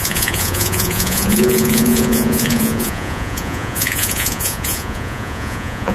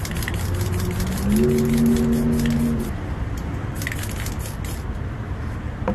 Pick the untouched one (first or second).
second